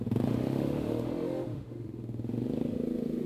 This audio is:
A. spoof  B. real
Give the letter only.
A